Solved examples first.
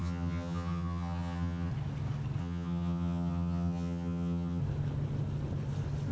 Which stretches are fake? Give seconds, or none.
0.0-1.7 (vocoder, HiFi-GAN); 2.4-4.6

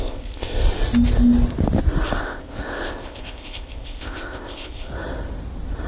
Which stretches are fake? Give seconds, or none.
0.0-0.6 (codec, ZipCodec); 2.2-4.9

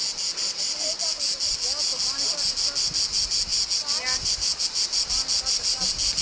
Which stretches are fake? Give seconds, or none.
none

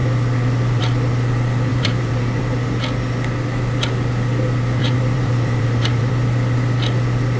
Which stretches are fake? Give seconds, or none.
1.7-2.4 (vocoder, BigVGAN v2); 4.8-6.1

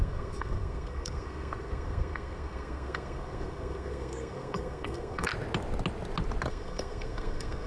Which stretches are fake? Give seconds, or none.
0.0-5.3 (codec, SNAC); 6.5-7.7

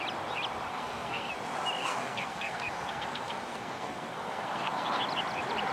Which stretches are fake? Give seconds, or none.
0.7-1.3 (codec, SNAC); 1.8-5.0

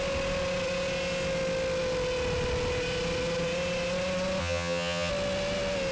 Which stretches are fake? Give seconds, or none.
4.4-5.1 (vocoder, HiFi-GAN)